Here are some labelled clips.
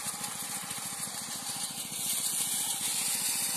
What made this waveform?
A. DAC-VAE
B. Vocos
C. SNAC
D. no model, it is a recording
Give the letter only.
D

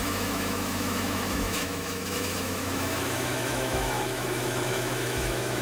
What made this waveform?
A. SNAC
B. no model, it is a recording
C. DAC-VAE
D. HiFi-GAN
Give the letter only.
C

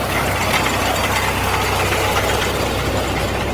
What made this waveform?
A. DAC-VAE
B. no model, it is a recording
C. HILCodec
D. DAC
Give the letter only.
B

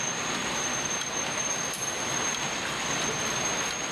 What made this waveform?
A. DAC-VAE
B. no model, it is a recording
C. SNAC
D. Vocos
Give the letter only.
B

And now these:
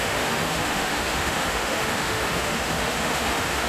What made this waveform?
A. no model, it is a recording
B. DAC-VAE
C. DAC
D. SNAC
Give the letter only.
B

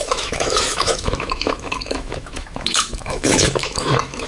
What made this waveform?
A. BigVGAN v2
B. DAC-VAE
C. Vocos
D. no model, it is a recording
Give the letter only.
B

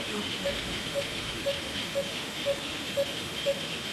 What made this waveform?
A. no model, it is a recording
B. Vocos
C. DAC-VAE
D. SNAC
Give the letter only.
C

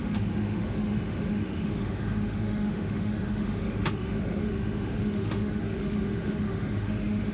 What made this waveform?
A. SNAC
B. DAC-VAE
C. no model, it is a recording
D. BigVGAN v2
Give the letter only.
B